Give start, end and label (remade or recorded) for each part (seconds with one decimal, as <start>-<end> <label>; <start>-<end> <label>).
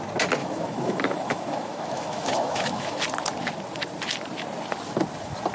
0.0-0.4 recorded; 0.4-3.0 remade; 3.0-5.5 recorded